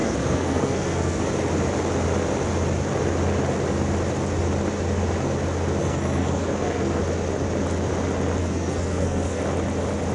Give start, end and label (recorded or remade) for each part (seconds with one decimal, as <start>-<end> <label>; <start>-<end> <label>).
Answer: 0.0-1.2 remade; 1.2-5.8 recorded; 5.8-7.0 remade; 7.0-8.4 recorded; 8.4-9.4 remade; 9.4-10.1 recorded